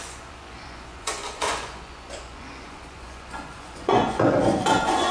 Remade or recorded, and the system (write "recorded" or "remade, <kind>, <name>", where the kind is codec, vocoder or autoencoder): remade, vocoder, Vocos